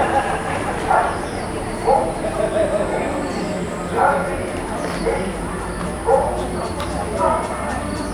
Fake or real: fake